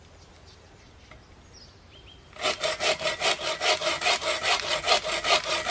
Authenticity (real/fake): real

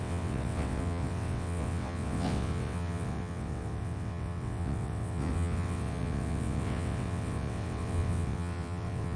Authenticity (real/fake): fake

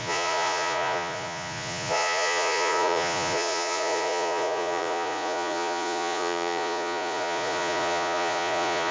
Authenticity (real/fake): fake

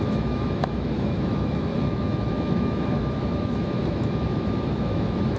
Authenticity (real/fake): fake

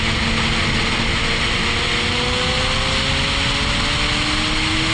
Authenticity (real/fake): real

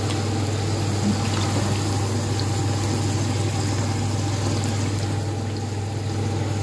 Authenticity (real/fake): real